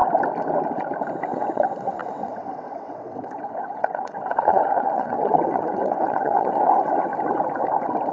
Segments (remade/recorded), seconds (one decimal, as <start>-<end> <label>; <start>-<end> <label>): 0.0-1.3 recorded; 1.3-7.1 remade; 7.1-8.1 recorded